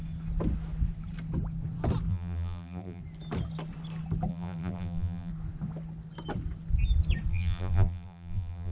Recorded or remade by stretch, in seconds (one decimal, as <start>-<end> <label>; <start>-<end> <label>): 0.0-2.1 recorded; 2.1-3.0 remade; 3.0-4.3 recorded; 4.3-5.3 remade; 5.3-7.3 recorded; 7.3-8.7 remade